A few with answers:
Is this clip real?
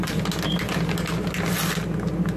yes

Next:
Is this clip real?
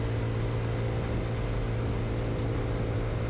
yes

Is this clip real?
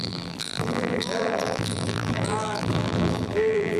no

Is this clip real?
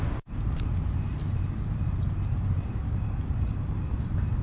no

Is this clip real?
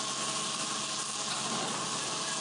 yes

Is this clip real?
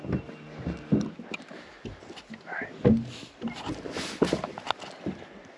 yes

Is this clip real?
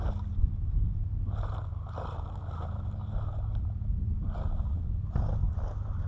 yes